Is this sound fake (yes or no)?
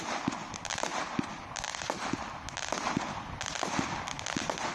no